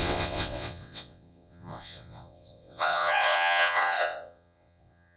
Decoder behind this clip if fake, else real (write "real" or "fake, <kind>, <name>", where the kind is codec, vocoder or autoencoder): fake, vocoder, WaveNeXt